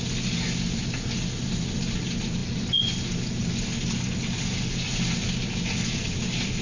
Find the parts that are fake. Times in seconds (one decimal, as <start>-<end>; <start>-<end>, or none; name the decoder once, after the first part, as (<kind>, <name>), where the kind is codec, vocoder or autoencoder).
none